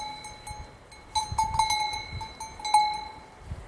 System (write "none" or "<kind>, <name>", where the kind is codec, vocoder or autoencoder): none